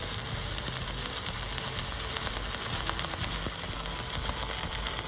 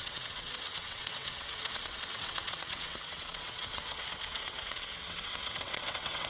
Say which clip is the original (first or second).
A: first